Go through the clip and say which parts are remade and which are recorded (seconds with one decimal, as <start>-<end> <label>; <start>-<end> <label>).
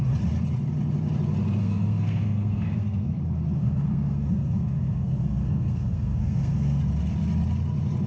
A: 0.0-1.6 recorded; 1.6-3.2 remade; 3.2-3.6 recorded; 3.6-6.8 remade; 6.8-8.1 recorded